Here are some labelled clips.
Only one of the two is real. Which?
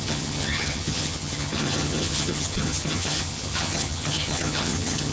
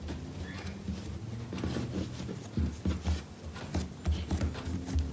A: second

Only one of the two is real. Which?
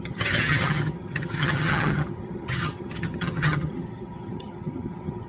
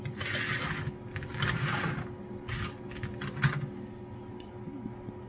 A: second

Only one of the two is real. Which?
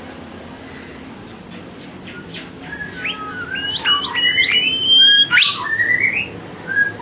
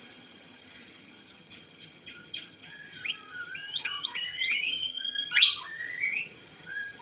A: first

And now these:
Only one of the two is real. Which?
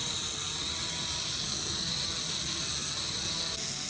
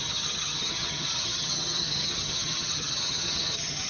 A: first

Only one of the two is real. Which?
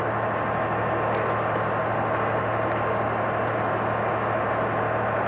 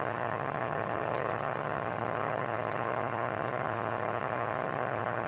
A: first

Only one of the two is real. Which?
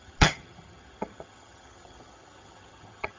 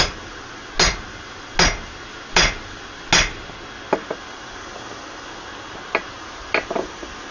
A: second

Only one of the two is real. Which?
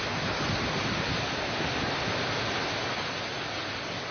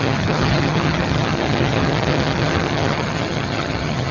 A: first